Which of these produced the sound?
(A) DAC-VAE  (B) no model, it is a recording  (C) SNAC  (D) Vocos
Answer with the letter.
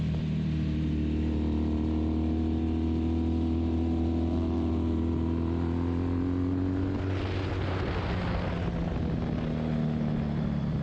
B